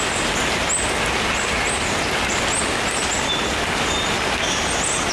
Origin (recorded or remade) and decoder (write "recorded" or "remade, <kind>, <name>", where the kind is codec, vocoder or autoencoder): recorded